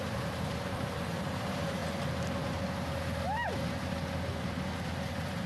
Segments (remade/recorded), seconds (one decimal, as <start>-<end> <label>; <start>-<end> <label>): 0.0-1.8 remade; 1.8-5.1 recorded; 5.1-5.5 remade